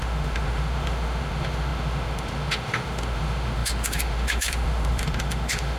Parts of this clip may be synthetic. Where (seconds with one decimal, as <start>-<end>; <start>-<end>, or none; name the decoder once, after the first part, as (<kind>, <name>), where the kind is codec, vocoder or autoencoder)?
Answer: 0.0-5.8 (autoencoder, DAC-VAE)